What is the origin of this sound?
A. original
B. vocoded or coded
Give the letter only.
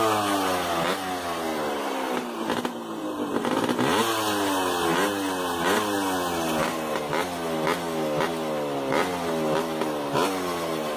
A